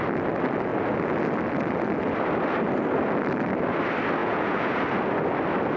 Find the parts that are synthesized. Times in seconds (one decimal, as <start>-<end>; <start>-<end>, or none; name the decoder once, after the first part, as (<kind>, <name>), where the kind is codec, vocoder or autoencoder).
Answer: 4.2-4.8 (vocoder, Vocos)